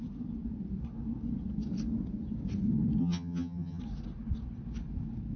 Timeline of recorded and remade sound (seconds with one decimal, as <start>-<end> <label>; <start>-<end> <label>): 0.0-3.0 recorded; 3.0-3.8 remade; 3.8-5.4 recorded